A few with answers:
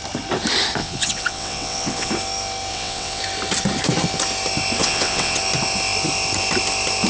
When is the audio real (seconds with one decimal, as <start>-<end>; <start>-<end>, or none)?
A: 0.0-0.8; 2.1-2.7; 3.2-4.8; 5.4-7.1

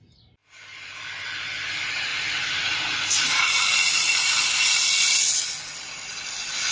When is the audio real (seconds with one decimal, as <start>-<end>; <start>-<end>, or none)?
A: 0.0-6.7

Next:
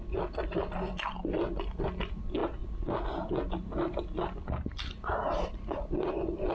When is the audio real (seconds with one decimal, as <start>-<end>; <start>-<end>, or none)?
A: 0.0-6.5

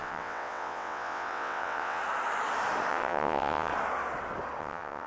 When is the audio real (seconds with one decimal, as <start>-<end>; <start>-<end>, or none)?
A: 2.0-2.9; 3.7-4.6

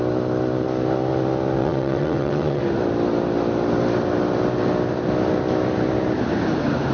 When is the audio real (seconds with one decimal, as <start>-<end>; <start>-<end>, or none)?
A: 0.0-1.6; 2.6-6.9

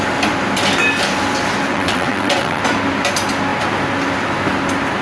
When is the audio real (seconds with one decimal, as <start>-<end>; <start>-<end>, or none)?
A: 0.0-1.7; 2.6-5.0